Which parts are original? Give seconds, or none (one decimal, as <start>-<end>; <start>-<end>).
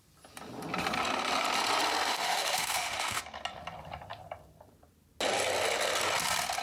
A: 0.0-2.1; 3.2-6.6